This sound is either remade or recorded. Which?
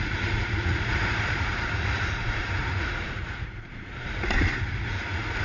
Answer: remade